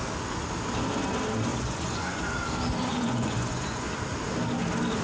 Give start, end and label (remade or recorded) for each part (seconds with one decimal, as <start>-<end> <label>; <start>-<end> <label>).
0.0-1.5 recorded; 1.5-2.2 remade; 2.2-2.9 recorded; 2.9-3.9 remade; 3.9-5.0 recorded